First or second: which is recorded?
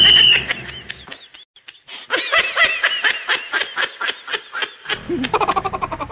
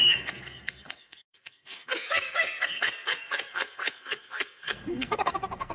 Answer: first